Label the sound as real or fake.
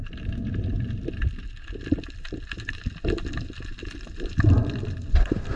real